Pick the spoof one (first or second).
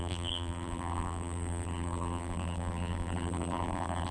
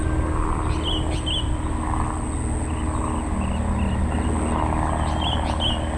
first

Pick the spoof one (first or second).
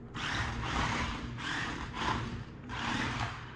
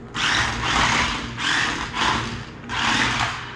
first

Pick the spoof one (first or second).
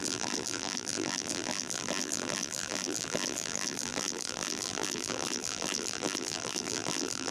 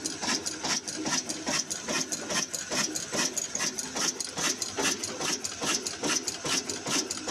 first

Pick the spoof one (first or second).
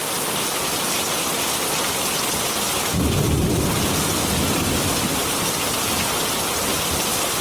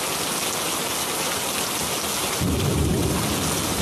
first